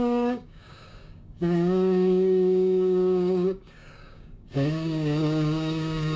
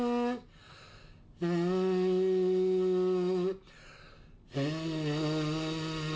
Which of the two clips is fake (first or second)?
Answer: first